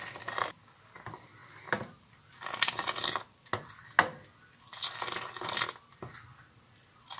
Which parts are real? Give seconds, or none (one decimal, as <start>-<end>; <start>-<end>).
0.0-7.2